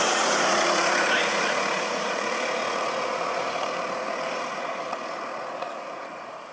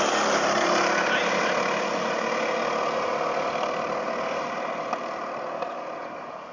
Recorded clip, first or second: second